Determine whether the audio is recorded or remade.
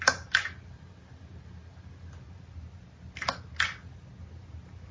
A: recorded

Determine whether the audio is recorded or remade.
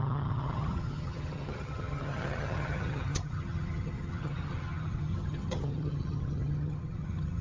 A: remade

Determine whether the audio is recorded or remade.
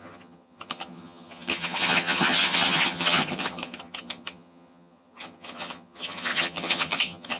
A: remade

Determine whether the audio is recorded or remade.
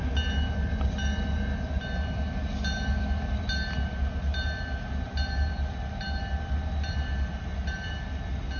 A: recorded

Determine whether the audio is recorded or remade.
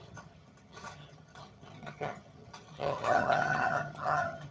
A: remade